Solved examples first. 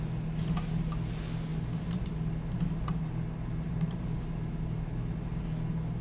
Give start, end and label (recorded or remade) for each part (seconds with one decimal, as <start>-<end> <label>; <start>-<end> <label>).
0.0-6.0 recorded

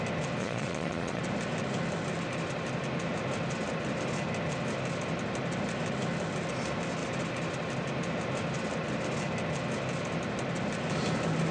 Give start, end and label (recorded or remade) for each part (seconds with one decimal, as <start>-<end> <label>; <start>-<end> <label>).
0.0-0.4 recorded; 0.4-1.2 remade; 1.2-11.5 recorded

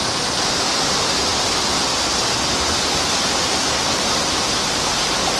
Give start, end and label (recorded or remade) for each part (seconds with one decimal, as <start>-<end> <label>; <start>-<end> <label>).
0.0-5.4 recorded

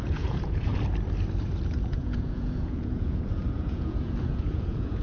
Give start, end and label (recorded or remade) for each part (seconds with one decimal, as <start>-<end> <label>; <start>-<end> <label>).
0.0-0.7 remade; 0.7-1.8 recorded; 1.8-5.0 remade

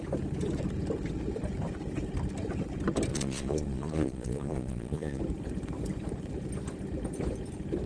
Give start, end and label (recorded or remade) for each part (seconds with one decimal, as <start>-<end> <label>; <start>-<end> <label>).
0.0-3.1 recorded; 3.1-5.2 remade; 5.2-7.9 recorded